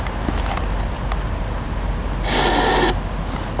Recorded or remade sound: recorded